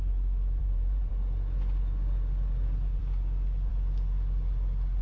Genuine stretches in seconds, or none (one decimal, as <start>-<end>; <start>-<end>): 0.0-0.6; 1.1-5.0